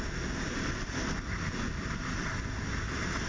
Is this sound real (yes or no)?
yes